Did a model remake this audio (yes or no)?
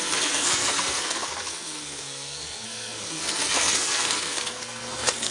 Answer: yes